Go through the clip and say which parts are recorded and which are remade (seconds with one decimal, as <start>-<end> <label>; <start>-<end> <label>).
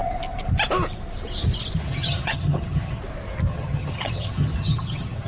0.0-1.8 recorded; 1.8-3.0 remade; 3.0-3.5 recorded; 3.5-5.3 remade